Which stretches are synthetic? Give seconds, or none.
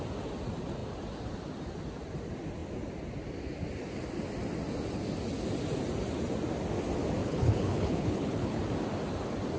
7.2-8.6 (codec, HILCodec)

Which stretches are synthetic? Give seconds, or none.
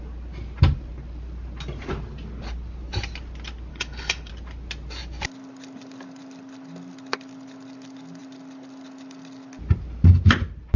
3.7-4.3 (codec, HILCodec)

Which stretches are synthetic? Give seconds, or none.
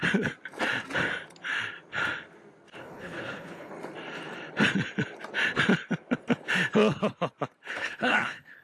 2.8-3.7 (codec, HILCodec); 7.7-8.6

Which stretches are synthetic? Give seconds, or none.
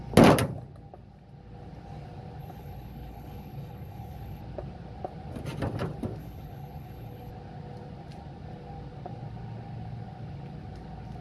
2.4-4.4 (codec, HILCodec); 6.2-7.3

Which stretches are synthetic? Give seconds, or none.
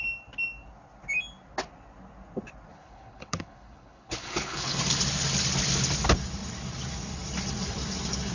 2.7-4.8 (codec, HILCodec)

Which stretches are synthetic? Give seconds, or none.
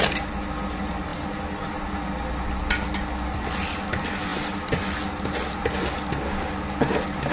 none